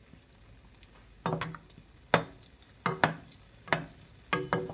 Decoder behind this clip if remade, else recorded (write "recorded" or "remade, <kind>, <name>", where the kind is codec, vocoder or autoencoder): recorded